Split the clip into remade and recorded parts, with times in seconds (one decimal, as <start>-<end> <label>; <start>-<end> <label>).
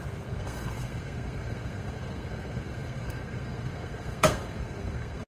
0.0-5.3 remade